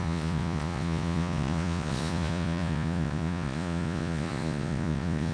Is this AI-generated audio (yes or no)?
yes